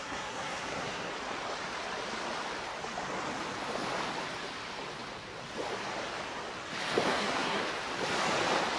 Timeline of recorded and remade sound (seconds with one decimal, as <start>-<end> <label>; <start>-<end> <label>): 0.0-1.1 remade; 1.1-7.1 recorded; 7.1-7.6 remade; 7.6-8.8 recorded